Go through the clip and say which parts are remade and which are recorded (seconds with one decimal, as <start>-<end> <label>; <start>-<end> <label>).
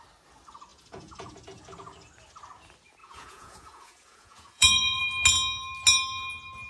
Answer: 0.0-0.7 recorded; 0.7-1.4 remade; 1.4-3.0 recorded; 3.0-5.0 remade; 5.0-6.7 recorded